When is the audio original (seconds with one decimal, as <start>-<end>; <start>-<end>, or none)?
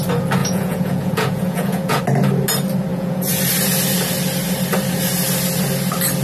0.0-0.4; 2.0-2.9; 3.4-6.2